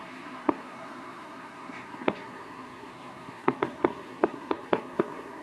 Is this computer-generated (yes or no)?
yes